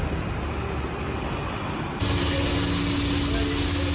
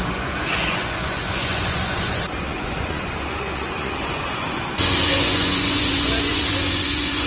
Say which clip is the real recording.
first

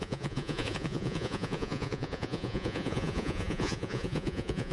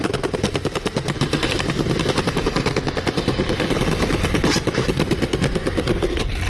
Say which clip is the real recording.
second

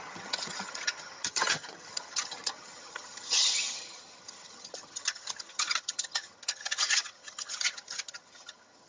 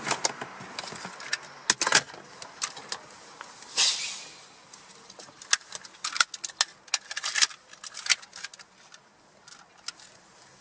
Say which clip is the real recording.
second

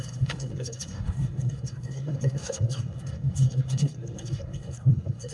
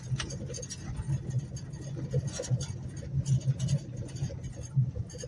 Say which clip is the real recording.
second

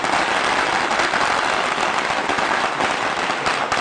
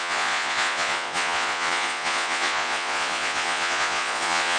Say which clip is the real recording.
first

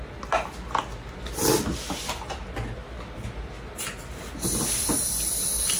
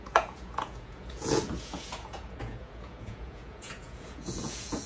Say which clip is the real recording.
first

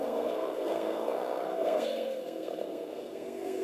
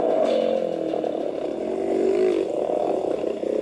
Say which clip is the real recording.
second